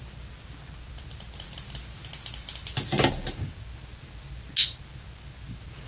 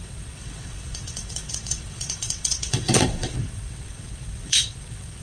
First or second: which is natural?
first